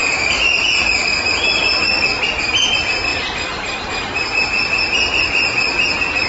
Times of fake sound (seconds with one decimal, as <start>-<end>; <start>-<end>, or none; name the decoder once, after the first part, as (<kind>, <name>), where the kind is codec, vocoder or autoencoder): 0.0-2.2 (vocoder, BigVGAN v2); 3.1-3.9